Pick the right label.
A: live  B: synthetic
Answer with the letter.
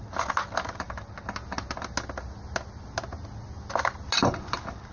A